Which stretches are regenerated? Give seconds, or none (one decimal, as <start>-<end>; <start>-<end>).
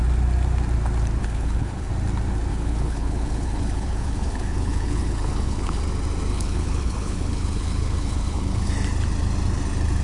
1.2-1.9; 2.5-5.8; 6.3-8.7